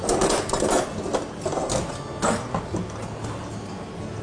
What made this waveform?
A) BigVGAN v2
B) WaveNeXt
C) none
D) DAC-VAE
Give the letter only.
C